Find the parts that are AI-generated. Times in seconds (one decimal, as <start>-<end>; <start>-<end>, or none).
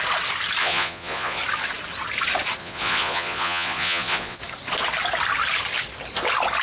0.6-1.4; 2.6-4.4